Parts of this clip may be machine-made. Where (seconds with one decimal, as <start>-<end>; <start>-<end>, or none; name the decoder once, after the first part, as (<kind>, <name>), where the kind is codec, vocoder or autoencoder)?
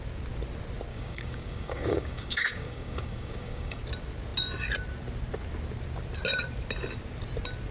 0.9-3.8 (codec, DAC)